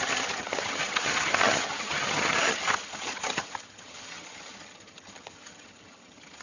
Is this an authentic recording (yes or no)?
no